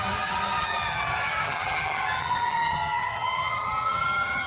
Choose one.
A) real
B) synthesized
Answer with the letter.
B